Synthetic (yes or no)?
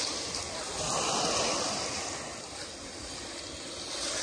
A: no